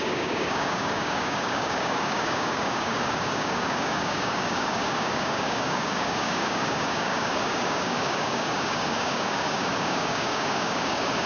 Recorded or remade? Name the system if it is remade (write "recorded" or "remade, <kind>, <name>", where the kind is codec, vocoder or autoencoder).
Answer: remade, codec, DAC